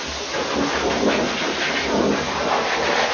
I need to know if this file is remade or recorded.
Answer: recorded